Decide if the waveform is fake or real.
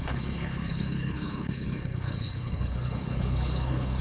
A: fake